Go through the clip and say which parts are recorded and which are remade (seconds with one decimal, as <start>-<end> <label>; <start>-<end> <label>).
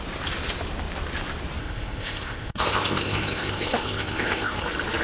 0.0-1.6 recorded; 1.6-4.6 remade; 4.6-5.0 recorded